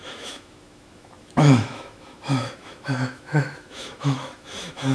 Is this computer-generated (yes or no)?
yes